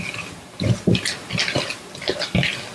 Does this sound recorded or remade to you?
recorded